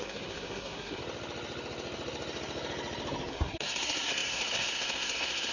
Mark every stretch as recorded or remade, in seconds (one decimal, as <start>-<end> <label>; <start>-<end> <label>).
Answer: 0.0-1.0 remade; 1.0-3.3 recorded; 3.3-5.5 remade